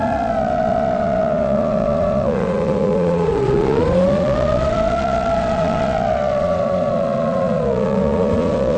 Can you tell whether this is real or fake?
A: fake